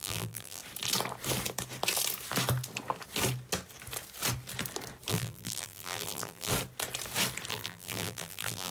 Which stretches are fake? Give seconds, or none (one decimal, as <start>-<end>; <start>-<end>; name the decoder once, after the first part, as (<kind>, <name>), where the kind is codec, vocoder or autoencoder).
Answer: 0.0-0.6 (vocoder, BigVGAN v2); 5.1-6.5; 7.5-8.7